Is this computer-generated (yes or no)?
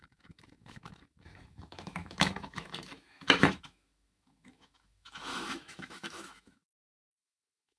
yes